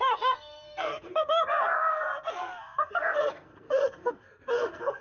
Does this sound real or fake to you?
fake